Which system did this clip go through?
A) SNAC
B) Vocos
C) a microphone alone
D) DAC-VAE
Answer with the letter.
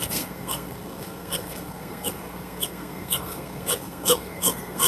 A